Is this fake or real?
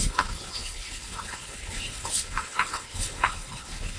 fake